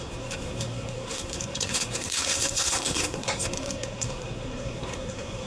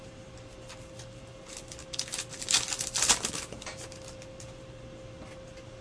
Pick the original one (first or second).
second